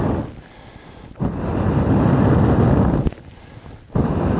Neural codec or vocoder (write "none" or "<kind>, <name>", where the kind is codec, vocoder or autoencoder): none